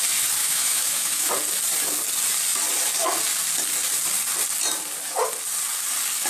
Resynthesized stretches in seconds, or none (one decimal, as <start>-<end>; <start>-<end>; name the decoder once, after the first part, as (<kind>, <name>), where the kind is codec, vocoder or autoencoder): 0.4-1.3 (autoencoder, DAC-VAE)

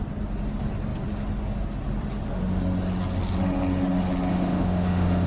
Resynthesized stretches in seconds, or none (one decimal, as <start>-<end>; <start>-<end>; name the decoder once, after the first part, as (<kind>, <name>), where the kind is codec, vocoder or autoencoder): 4.3-5.3 (autoencoder, DAC-VAE)